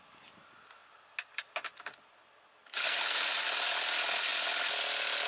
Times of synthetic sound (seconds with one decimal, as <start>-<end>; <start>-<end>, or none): 2.8-3.3